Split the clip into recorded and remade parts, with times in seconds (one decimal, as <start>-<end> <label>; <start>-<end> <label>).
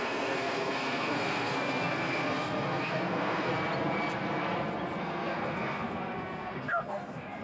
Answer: 0.0-3.5 remade; 3.5-5.0 recorded; 5.0-7.4 remade